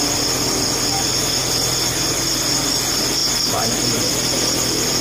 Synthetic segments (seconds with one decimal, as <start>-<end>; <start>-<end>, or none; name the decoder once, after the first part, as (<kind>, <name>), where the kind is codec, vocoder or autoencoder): none